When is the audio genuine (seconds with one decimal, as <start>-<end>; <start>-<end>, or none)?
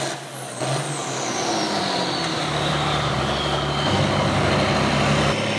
0.0-2.3; 4.5-5.6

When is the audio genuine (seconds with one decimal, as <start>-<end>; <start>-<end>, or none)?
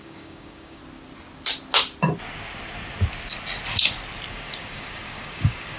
0.8-4.3